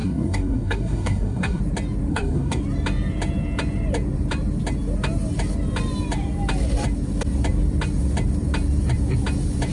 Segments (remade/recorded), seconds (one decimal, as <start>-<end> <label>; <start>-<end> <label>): 0.0-1.6 remade; 1.6-2.1 recorded; 2.1-2.6 remade; 2.6-9.7 recorded